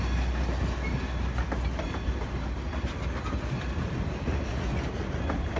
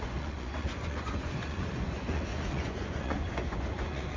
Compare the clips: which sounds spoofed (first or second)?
second